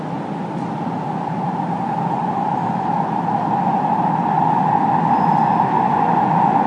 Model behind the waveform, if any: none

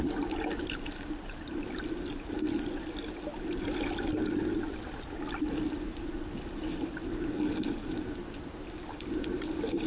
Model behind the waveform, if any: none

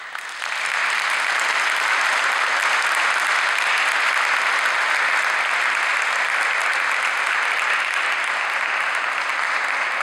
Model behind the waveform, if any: none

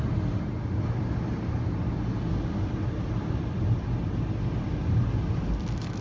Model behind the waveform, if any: none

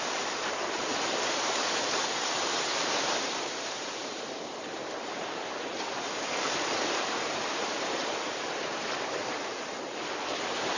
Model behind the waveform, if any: vocoder, BigVGAN v2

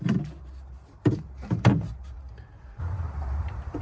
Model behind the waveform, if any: vocoder, BigVGAN v2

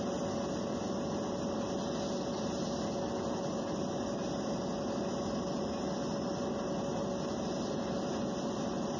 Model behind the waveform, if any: none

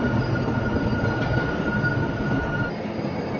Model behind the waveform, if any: none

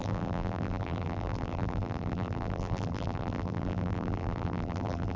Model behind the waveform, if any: vocoder, BigVGAN v2